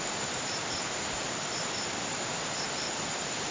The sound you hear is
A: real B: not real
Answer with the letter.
B